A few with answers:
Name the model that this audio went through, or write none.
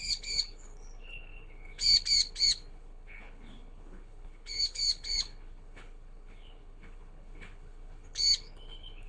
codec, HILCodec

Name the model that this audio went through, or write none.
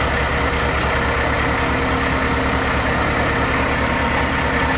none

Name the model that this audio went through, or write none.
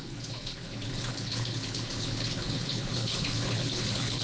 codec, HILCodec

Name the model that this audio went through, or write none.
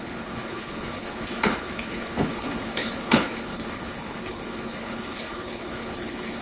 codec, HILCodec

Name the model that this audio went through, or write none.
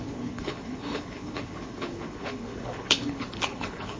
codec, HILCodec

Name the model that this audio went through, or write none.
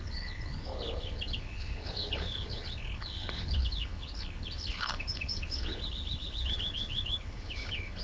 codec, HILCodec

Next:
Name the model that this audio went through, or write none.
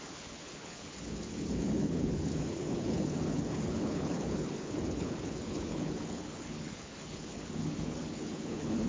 codec, HILCodec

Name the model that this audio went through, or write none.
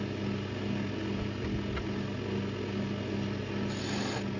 none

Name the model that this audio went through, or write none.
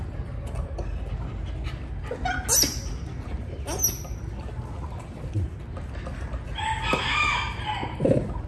none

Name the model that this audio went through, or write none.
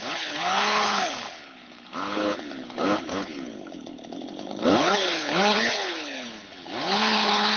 codec, HILCodec